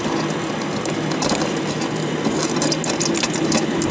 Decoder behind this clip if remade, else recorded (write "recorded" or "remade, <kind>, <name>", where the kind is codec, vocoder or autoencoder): recorded